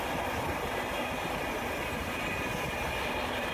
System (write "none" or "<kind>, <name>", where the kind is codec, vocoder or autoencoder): none